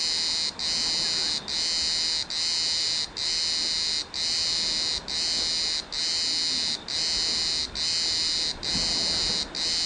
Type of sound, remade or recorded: recorded